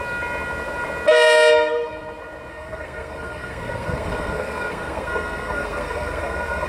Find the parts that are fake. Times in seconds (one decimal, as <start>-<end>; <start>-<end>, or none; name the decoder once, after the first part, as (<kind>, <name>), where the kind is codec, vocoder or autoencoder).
2.5-6.7 (codec, SNAC)